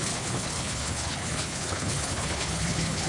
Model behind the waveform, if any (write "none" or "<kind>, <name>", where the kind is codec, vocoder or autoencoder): codec, HILCodec